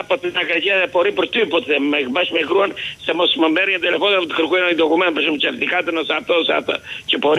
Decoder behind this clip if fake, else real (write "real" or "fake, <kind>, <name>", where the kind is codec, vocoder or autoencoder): fake, autoencoder, DAC-VAE